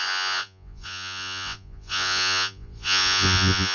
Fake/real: fake